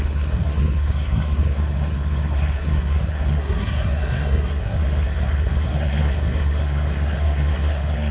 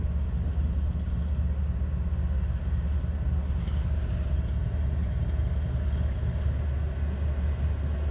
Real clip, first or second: second